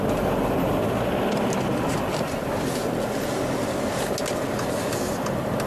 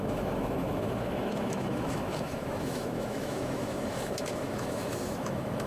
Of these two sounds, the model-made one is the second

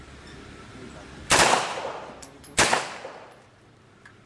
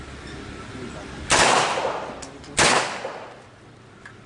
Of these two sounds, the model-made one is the first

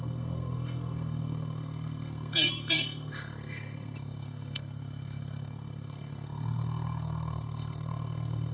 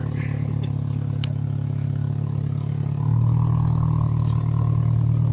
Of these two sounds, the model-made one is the first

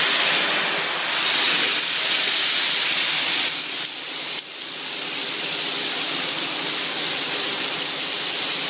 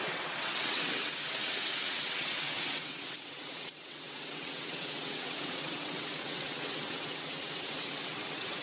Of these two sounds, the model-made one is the second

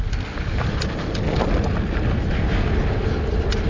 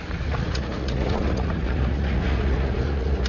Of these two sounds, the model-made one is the second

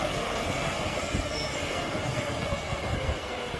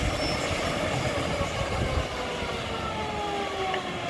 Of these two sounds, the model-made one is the first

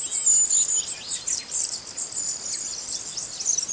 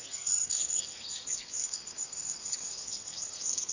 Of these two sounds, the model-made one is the second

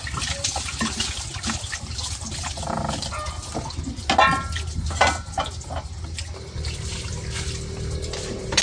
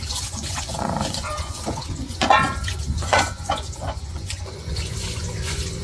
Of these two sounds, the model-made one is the second